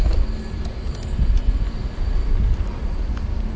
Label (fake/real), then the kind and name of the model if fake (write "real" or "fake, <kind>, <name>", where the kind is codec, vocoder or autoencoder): real